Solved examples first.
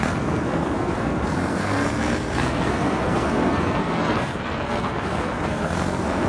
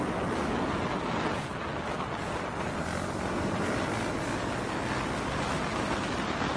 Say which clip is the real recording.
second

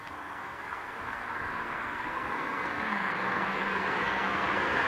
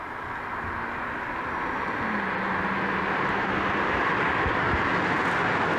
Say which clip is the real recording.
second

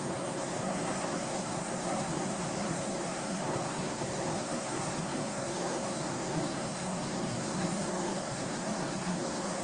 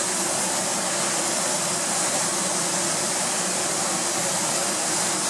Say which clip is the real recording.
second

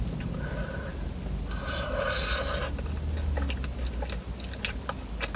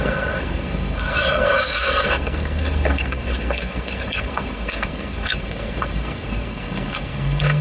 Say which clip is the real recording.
first